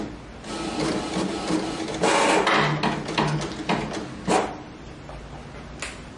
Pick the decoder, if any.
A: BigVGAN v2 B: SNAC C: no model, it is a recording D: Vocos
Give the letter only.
C